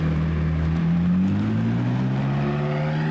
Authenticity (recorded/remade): recorded